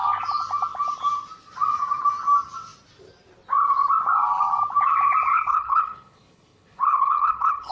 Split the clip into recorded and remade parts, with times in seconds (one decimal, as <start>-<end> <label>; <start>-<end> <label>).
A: 0.0-5.3 recorded; 5.3-7.7 remade

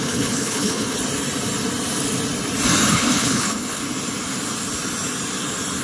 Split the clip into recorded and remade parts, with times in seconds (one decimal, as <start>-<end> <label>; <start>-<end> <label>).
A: 0.0-1.0 remade; 1.0-2.9 recorded; 2.9-3.8 remade; 3.8-5.8 recorded

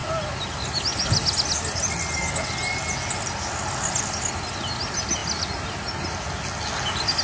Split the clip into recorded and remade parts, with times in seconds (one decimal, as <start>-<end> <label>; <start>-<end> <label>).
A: 0.0-7.2 recorded

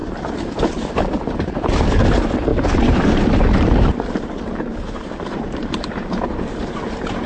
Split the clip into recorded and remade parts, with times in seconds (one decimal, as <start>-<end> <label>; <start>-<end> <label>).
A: 0.0-1.5 remade; 1.5-2.5 recorded; 2.5-6.7 remade; 6.7-7.3 recorded

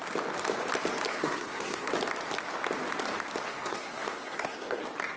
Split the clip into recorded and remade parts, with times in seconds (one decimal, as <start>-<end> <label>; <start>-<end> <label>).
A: 0.0-1.1 recorded; 1.1-1.9 remade; 1.9-3.5 recorded; 3.5-4.8 remade; 4.8-5.2 recorded

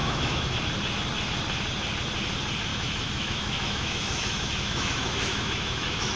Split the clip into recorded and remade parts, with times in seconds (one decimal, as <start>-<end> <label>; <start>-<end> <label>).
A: 0.0-0.6 remade; 0.6-2.7 recorded; 2.7-6.2 remade

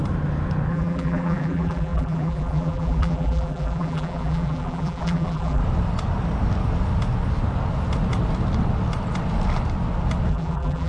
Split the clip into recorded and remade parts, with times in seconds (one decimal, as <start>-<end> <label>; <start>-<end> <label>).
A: 0.0-0.7 recorded; 0.7-5.6 remade; 5.6-10.3 recorded; 10.3-10.9 remade